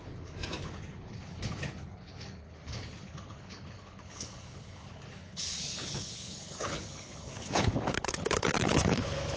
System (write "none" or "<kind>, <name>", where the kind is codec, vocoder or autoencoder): codec, HILCodec